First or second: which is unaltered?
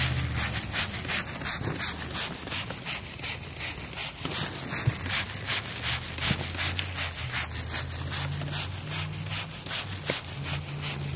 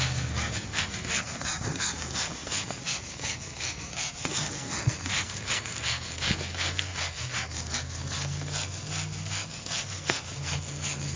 first